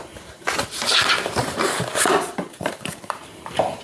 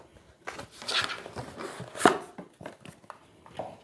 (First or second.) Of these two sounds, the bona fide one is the second